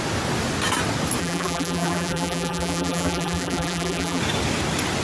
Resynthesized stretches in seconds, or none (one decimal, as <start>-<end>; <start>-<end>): 1.2-4.2